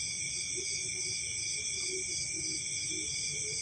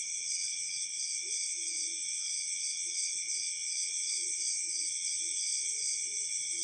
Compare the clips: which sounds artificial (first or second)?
second